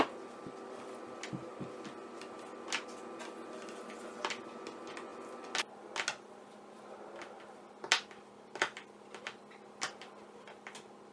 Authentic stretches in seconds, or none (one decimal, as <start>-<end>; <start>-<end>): 0.0-11.1